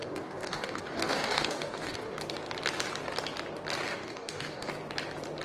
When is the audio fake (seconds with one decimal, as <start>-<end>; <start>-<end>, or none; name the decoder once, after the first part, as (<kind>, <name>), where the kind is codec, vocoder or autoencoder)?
0.0-2.2 (codec, DAC); 3.9-4.7